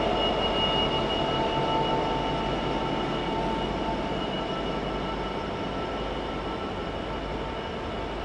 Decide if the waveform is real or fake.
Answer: real